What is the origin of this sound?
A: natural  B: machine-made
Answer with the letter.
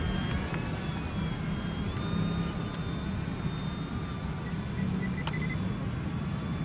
A